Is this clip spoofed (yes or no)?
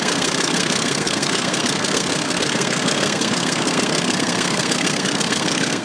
yes